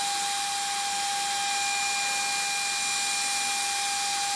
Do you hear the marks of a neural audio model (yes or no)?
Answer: no